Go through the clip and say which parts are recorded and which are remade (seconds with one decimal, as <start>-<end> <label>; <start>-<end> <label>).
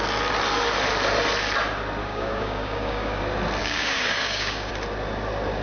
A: 0.0-2.0 recorded; 2.0-3.2 remade; 3.2-3.6 recorded; 3.6-4.7 remade; 4.7-5.6 recorded